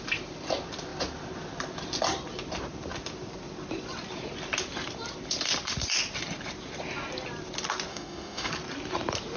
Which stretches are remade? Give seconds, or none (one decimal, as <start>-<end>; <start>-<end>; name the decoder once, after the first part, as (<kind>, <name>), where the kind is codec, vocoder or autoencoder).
7.9-8.5 (autoencoder, DAC-VAE)